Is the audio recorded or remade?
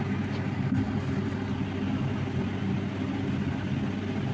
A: recorded